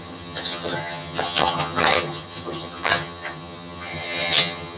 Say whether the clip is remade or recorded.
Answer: remade